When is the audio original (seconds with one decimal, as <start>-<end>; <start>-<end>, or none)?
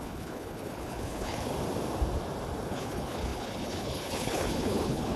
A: 1.5-2.7